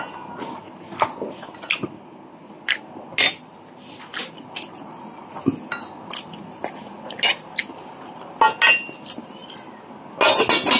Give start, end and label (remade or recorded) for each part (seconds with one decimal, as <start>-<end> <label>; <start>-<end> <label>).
0.0-10.8 recorded